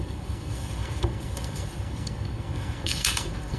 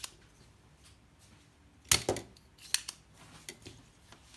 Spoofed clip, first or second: first